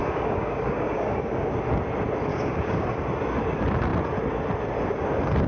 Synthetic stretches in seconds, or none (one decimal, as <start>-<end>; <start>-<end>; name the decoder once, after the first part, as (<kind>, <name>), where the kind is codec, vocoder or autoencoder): 0.0-1.5 (codec, DAC); 2.3-2.9